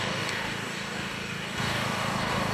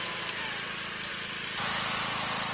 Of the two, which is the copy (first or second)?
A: first